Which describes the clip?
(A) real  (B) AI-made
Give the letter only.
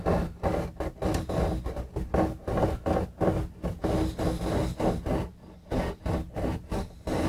A